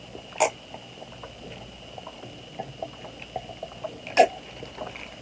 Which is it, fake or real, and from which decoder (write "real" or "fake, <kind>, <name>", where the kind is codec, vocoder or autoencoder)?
real